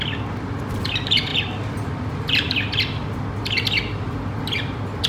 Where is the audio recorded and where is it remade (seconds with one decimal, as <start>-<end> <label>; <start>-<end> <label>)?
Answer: 0.0-5.1 recorded